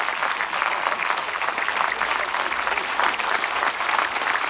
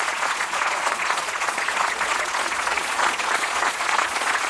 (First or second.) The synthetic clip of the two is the second